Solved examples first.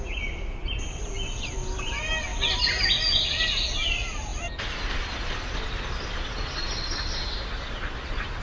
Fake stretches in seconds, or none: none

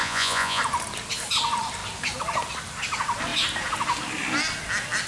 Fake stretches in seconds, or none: 0.0-0.6 (vocoder, Vocos)

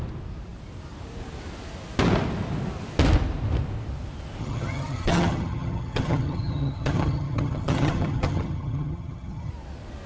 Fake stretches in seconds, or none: 4.4-9.5 (vocoder, HiFi-GAN)